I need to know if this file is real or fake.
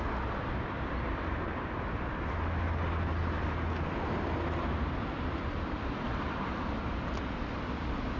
real